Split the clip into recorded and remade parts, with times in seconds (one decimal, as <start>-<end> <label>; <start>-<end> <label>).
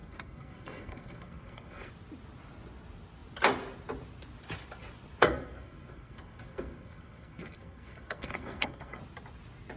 0.0-1.9 remade; 1.9-5.2 recorded; 5.2-9.0 remade; 9.0-9.8 recorded